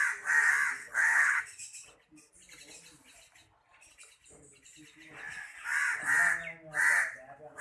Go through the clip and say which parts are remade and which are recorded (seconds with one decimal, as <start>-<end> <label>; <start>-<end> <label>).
0.0-0.8 recorded; 0.8-1.4 remade; 1.4-7.6 recorded